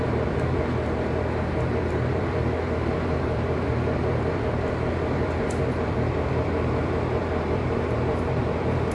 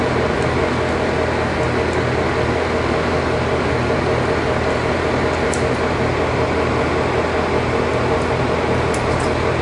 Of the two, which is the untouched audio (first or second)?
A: second